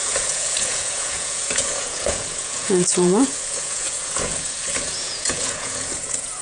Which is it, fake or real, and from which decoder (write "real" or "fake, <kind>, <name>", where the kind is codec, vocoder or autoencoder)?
fake, vocoder, Vocos